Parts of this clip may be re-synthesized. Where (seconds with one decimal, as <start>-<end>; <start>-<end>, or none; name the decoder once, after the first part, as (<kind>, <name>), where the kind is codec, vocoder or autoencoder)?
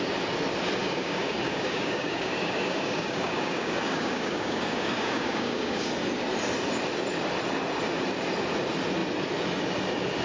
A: 0.8-5.9 (codec, DAC)